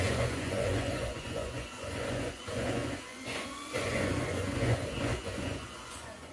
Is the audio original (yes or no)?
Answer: no